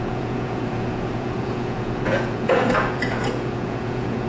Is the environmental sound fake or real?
fake